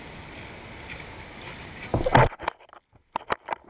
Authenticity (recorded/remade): recorded